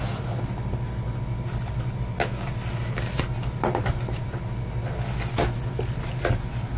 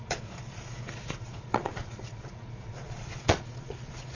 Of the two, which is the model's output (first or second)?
second